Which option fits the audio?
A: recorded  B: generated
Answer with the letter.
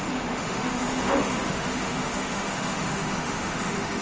B